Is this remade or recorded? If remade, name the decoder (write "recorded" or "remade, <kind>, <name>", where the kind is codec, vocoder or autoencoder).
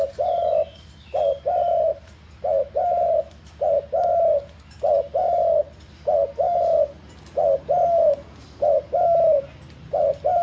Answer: recorded